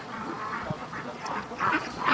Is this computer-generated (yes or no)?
yes